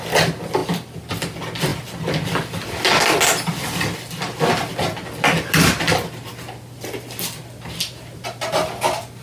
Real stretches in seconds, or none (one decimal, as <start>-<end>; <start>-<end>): 0.0-9.2